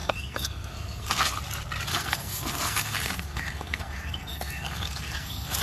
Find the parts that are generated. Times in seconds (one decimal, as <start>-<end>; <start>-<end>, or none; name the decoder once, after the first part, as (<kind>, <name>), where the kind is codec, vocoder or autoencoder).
0.0-1.3 (codec, SNAC); 1.9-5.6